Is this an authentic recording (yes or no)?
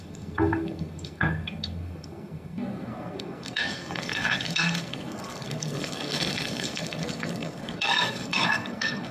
no